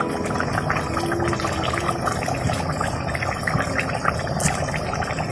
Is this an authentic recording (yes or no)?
yes